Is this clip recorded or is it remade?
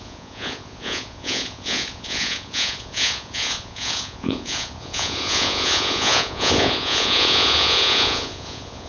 remade